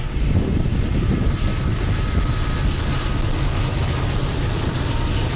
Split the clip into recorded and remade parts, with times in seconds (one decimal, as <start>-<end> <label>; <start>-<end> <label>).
0.0-1.5 remade; 1.5-4.1 recorded; 4.1-5.4 remade